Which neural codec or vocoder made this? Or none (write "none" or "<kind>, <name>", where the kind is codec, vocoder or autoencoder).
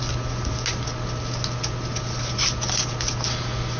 none